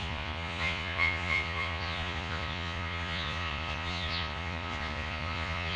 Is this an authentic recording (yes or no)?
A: no